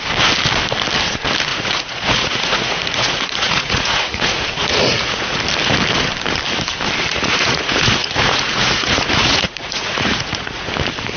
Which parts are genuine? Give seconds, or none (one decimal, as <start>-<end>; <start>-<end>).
0.0-1.5; 5.4-7.1; 10.6-11.2